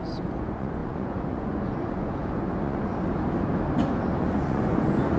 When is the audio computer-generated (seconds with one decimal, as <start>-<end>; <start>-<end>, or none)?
0.0-2.9; 4.2-5.2